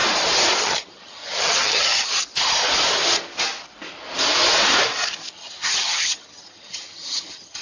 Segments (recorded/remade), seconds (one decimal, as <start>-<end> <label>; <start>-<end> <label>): 0.0-0.6 recorded; 0.6-2.1 remade; 2.1-5.3 recorded; 5.3-7.6 remade